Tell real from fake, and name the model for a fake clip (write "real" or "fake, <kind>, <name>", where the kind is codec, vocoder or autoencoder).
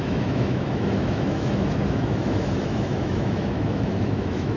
fake, autoencoder, DAC-VAE